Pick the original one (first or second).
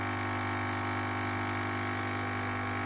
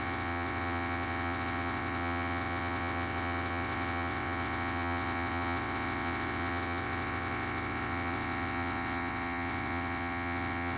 first